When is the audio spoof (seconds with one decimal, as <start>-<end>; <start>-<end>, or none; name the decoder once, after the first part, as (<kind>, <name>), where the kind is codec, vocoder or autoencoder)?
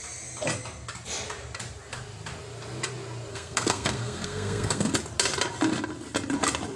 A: 3.3-4.9 (codec, SNAC)